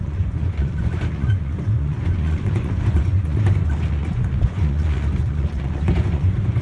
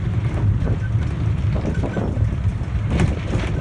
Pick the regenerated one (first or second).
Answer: first